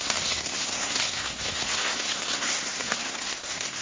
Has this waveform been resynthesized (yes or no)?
yes